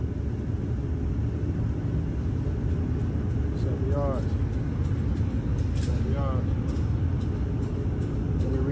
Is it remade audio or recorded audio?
recorded